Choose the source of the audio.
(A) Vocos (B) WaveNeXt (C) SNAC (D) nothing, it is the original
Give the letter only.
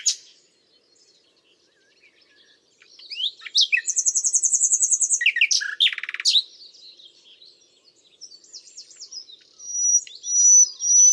D